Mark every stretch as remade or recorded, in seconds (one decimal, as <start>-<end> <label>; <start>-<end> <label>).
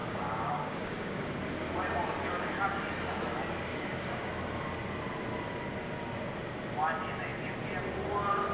0.0-1.5 remade; 1.5-3.7 recorded; 3.7-4.3 remade; 4.3-8.5 recorded